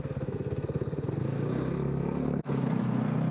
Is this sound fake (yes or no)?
yes